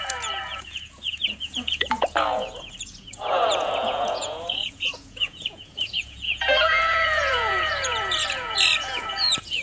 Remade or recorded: remade